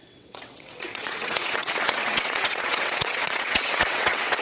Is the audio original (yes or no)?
no